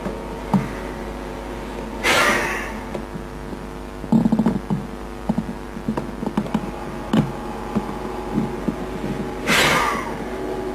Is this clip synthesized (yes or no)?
no